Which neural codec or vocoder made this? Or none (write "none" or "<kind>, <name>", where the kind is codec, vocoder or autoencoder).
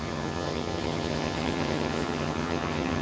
vocoder, HiFi-GAN